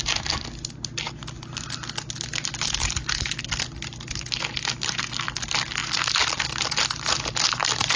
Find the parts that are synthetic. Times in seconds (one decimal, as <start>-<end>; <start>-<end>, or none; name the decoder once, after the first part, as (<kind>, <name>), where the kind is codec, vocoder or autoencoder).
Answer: none